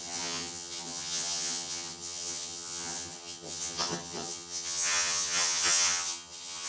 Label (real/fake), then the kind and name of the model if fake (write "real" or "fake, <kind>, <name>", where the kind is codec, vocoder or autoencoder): fake, vocoder, HiFi-GAN